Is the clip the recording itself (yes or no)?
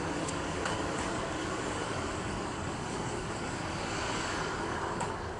no